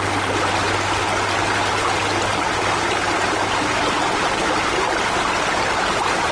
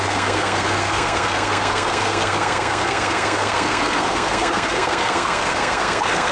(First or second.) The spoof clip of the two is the second